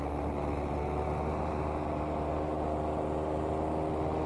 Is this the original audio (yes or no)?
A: yes